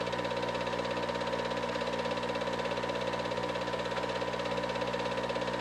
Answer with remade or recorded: recorded